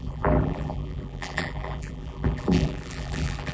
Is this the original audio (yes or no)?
no